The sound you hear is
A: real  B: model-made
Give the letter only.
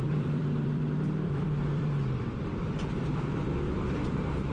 B